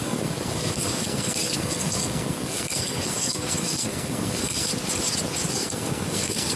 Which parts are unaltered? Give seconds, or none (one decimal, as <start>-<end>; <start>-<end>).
4.7-5.5